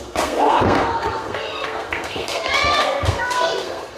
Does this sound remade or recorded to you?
remade